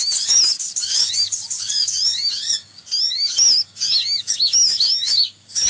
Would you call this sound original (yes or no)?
no